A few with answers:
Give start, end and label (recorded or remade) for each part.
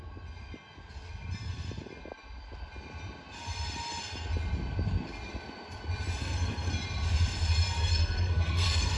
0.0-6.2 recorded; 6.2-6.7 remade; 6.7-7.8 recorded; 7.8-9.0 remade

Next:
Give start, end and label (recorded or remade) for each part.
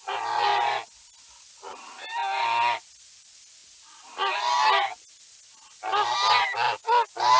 0.0-7.4 recorded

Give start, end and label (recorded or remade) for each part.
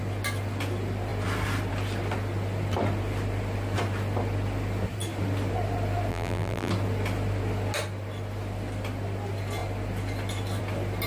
0.0-6.1 recorded; 6.1-6.7 remade; 6.7-11.1 recorded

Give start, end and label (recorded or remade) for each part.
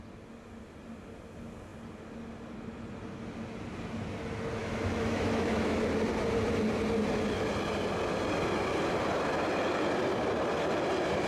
0.0-4.6 recorded; 4.6-5.8 remade; 5.8-11.3 recorded